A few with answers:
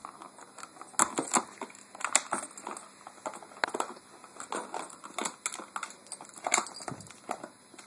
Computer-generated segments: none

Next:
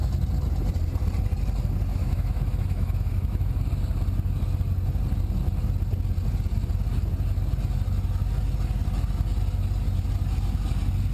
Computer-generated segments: 1.9-3.5 (autoencoder, DAC-VAE)